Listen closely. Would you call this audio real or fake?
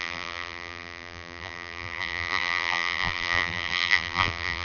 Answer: fake